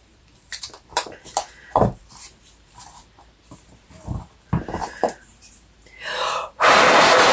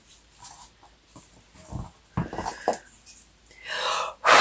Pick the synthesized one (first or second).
first